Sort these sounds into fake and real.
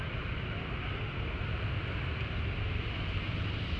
real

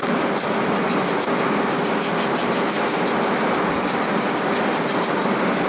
real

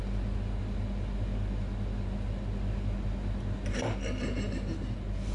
real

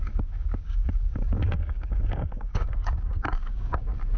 fake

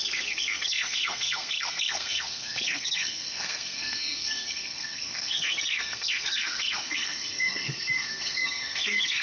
fake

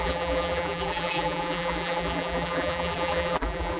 fake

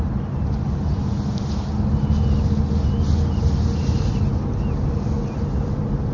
real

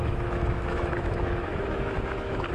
fake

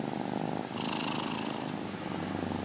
real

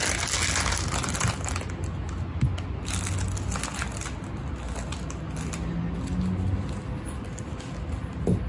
real